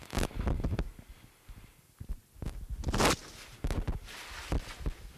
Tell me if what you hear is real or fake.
real